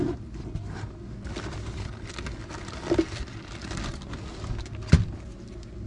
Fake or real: real